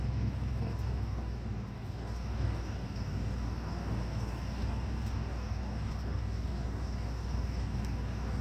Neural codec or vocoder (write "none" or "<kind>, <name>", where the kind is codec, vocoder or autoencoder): codec, DAC